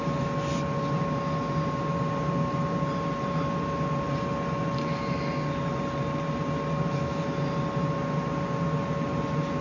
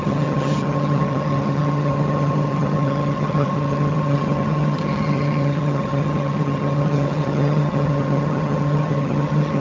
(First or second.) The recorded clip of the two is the first